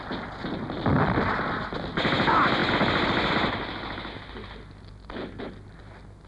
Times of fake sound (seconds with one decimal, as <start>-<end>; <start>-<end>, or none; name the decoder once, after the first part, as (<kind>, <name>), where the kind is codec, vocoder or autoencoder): none